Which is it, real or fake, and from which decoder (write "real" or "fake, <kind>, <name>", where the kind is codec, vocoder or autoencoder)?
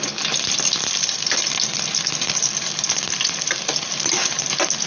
real